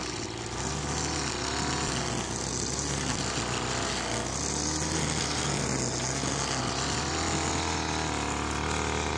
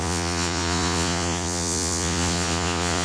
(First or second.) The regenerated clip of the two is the second